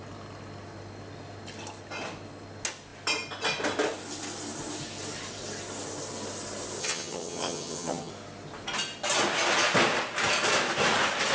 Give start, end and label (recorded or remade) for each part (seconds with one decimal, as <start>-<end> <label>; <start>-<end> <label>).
0.0-6.8 recorded; 6.8-8.1 remade; 8.1-11.3 recorded